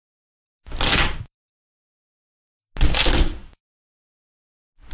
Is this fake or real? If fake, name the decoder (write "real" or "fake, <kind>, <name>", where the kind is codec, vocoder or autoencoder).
real